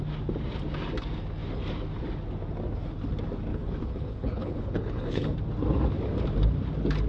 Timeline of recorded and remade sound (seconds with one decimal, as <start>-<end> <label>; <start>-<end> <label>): 0.0-3.5 recorded; 3.5-5.3 remade; 5.3-7.1 recorded